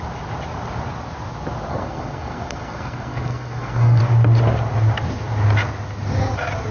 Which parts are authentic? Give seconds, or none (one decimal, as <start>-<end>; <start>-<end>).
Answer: 0.0-1.7; 4.0-6.7